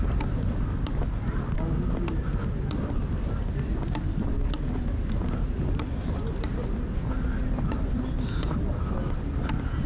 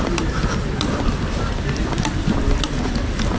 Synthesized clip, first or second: second